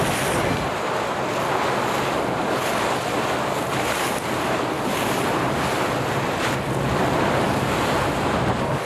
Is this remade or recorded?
recorded